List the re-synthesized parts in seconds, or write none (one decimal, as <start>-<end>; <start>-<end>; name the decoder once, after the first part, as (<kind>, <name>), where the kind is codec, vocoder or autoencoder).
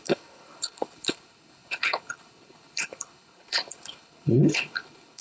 0.0-5.2 (codec, HILCodec)